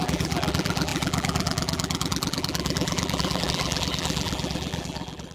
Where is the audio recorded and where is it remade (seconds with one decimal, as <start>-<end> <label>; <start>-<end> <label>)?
0.0-5.3 remade